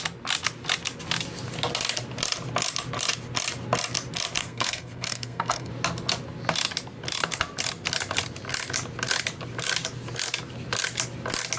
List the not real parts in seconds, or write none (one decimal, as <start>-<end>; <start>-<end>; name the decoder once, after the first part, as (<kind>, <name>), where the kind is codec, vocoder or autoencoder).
4.4-5.7 (codec, SNAC)